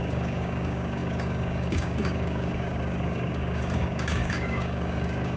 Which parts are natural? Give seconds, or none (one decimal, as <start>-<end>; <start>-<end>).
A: none

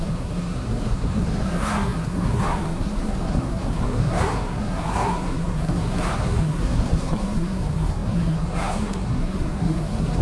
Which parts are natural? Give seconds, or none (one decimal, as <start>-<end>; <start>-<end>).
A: none

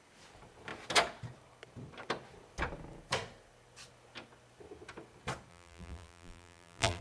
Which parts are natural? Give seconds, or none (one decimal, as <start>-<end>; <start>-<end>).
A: 0.0-5.5

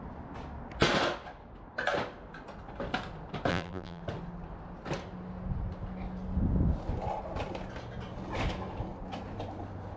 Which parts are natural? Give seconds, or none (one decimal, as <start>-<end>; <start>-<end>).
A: 0.0-3.5; 4.0-10.0

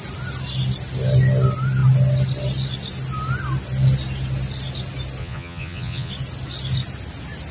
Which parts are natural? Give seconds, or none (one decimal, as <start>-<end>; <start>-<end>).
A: 0.0-5.2; 6.1-7.5

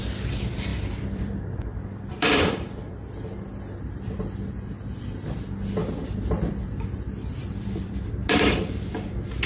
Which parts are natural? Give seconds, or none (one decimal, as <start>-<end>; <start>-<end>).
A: 0.0-0.7; 2.9-5.8; 8.2-9.5

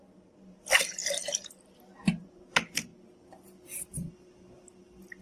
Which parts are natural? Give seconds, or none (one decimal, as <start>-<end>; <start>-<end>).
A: 0.0-5.2

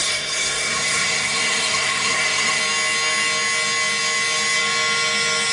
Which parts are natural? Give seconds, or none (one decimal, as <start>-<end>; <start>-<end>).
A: 2.6-5.5